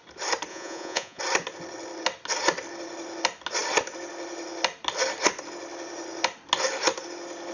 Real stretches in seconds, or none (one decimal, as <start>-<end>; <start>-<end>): 0.0-0.5; 1.2-7.5